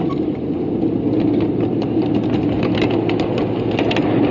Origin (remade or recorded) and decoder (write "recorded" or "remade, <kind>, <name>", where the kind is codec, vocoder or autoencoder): recorded